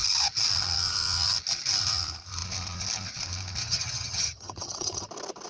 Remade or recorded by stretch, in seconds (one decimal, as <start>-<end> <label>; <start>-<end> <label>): 0.0-3.6 recorded; 3.6-5.1 remade; 5.1-5.5 recorded